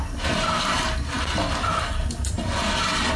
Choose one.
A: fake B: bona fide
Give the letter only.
B